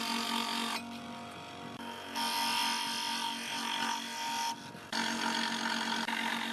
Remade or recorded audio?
recorded